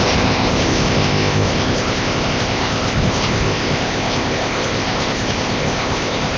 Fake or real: fake